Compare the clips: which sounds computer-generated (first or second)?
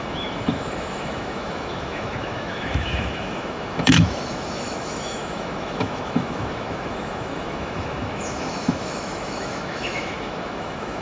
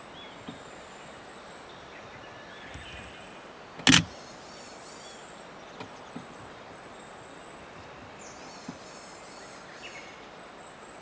first